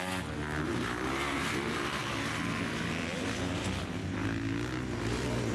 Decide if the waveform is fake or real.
real